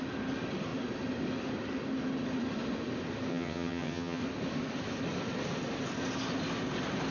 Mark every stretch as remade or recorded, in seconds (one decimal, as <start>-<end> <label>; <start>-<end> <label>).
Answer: 0.0-3.3 recorded; 3.3-4.2 remade; 4.2-7.1 recorded